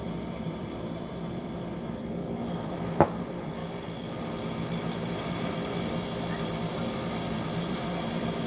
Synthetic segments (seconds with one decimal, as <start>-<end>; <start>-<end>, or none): 0.0-3.6; 6.3-8.5